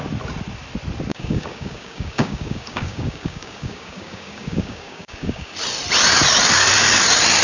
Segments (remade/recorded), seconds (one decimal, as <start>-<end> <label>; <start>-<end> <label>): 0.0-1.1 recorded; 1.1-5.5 remade; 5.5-7.4 recorded